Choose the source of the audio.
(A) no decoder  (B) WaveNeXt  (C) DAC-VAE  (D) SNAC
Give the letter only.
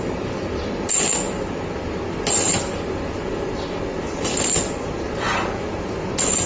A